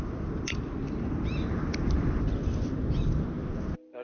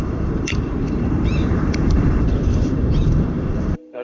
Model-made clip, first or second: second